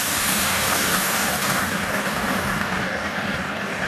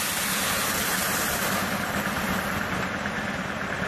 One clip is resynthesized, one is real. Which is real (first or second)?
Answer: second